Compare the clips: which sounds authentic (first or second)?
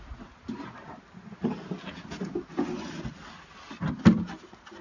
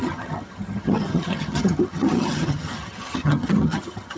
first